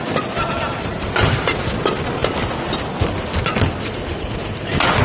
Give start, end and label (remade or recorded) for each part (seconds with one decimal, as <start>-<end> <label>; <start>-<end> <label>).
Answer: 0.0-5.0 recorded